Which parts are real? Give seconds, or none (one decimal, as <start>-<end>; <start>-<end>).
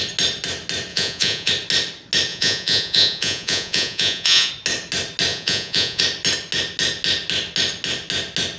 0.0-0.9; 1.5-2.3; 4.5-5.3; 6.0-8.6